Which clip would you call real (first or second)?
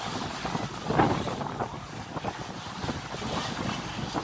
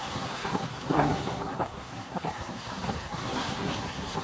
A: first